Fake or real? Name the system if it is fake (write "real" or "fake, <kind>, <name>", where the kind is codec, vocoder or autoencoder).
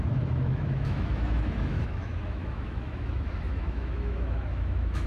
fake, autoencoder, DAC-VAE